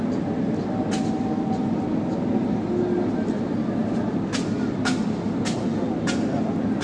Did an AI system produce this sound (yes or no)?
no